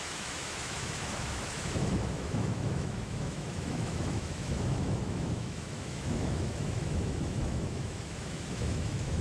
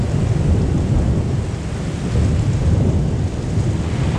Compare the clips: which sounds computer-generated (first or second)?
first